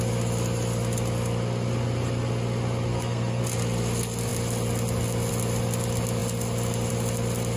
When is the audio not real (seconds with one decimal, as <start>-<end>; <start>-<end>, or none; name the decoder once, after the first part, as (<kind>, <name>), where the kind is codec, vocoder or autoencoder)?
2.9-3.4 (codec, SNAC)